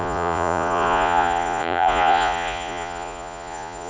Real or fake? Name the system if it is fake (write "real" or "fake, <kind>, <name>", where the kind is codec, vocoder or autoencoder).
fake, vocoder, Vocos